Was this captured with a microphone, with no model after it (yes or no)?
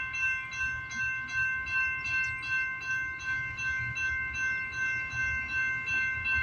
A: yes